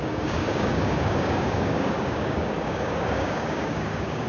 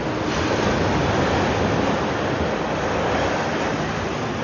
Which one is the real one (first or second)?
second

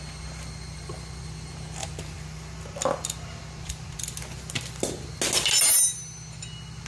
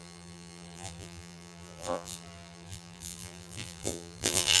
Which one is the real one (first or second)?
first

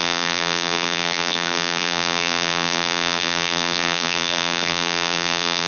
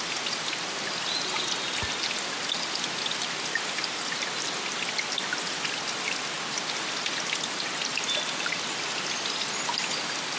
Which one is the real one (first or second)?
second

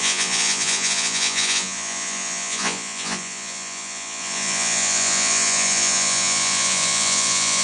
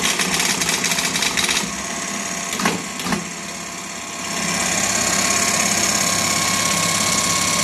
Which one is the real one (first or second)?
second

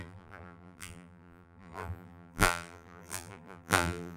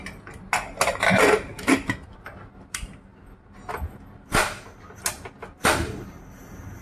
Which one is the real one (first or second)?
second